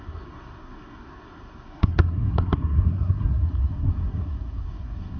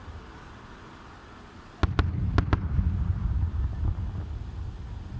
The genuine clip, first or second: second